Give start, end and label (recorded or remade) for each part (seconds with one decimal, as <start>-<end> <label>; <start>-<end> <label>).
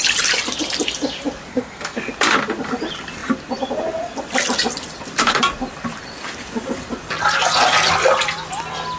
0.0-1.5 recorded; 1.5-2.1 remade; 2.1-9.0 recorded